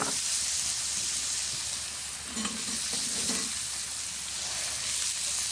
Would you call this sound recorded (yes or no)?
yes